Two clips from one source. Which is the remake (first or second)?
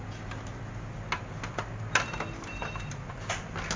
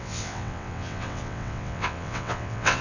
second